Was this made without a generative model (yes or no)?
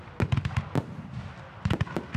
yes